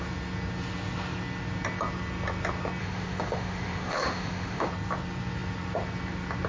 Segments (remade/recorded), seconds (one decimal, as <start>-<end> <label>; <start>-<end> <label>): 0.0-2.8 recorded; 2.8-4.7 remade; 4.7-6.5 recorded